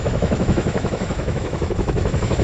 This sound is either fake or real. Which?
fake